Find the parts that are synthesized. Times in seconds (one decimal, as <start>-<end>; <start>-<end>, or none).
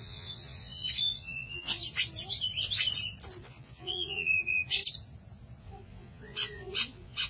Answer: 0.0-1.8; 3.4-4.8; 5.6-7.3